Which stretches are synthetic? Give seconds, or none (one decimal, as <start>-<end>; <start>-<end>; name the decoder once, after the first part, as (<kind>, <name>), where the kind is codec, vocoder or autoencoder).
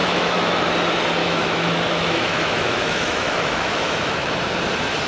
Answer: 0.0-0.7 (autoencoder, DAC-VAE); 1.2-4.3